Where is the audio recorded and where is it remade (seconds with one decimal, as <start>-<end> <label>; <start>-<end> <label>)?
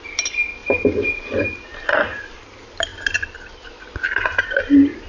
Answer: 0.0-5.1 recorded